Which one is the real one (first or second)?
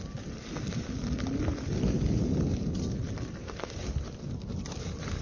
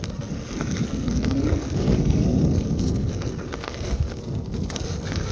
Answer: first